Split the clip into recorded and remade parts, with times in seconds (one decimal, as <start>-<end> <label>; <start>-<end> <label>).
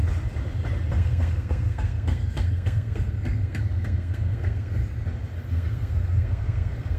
0.0-0.9 recorded; 0.9-4.8 remade; 4.8-5.5 recorded; 5.5-7.0 remade